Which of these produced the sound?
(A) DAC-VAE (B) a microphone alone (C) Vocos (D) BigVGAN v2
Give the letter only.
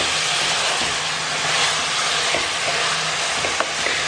B